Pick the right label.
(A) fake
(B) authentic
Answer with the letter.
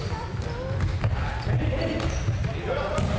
B